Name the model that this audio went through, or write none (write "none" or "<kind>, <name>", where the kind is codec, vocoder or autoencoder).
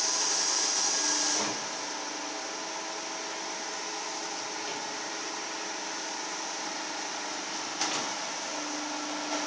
none